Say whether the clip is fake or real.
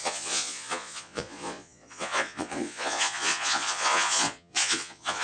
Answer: fake